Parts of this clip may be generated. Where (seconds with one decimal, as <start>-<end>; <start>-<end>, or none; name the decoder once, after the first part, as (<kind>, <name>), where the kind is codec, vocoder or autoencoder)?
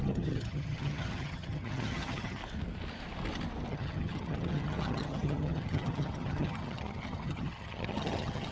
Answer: 0.0-2.4 (vocoder, HiFi-GAN); 3.7-8.5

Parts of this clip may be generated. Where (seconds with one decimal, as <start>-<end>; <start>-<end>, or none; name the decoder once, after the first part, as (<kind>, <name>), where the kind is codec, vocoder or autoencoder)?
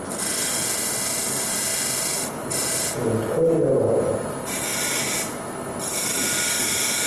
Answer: none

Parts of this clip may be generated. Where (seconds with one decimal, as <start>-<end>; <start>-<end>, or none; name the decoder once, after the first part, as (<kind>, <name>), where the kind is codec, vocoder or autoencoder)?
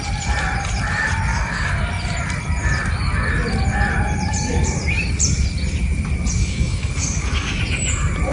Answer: 1.3-1.8 (codec, DAC); 6.4-7.6